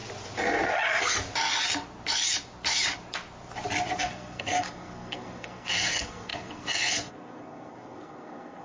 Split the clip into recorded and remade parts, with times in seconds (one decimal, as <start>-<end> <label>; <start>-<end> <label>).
0.0-4.0 recorded; 4.0-8.6 remade